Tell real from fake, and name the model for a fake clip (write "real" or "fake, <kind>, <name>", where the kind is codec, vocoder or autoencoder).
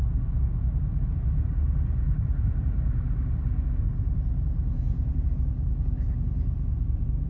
fake, vocoder, BigVGAN v2